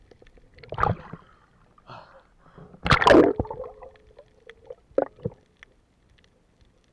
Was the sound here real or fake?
real